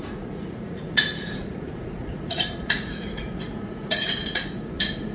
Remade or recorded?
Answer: remade